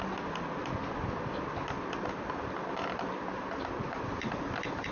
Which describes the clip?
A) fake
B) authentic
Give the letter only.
B